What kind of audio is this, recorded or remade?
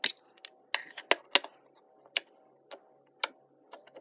recorded